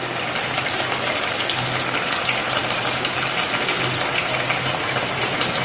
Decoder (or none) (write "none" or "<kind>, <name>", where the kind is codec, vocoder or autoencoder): none